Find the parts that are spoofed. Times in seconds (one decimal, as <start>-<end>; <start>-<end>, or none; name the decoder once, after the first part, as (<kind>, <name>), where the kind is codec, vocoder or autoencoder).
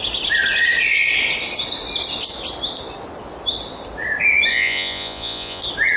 4.5-5.6 (vocoder, Vocos)